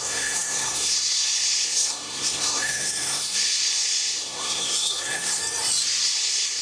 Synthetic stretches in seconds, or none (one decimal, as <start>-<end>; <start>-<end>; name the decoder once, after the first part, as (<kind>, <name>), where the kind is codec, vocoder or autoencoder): 0.0-5.4 (codec, SNAC); 6.0-6.6